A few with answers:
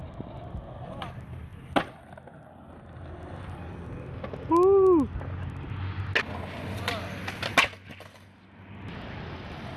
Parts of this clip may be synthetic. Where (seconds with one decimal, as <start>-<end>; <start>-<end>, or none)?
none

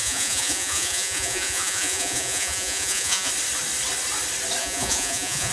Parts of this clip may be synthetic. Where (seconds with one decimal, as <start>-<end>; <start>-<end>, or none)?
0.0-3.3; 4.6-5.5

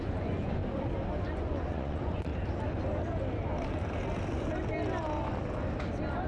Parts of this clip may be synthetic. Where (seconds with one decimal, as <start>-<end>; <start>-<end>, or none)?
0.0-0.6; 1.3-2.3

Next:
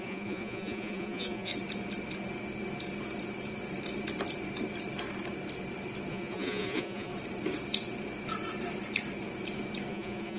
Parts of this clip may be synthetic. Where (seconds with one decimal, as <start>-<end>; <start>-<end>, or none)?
0.0-1.5; 6.1-7.1; 9.9-10.4

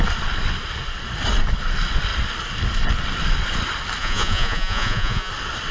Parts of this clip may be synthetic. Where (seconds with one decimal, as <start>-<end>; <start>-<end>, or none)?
4.0-5.3

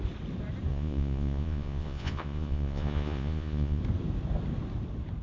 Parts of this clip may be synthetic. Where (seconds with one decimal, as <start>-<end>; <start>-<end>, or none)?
0.7-3.8

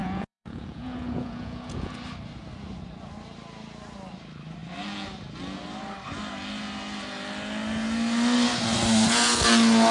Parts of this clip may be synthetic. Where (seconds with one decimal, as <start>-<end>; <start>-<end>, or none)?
0.0-1.9